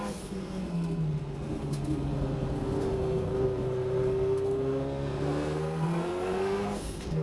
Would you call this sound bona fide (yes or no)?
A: no